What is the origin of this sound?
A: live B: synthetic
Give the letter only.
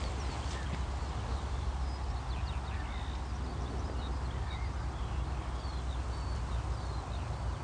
A